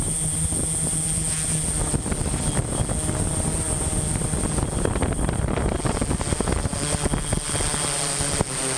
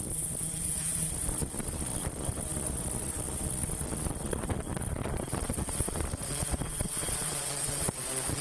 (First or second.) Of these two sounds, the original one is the first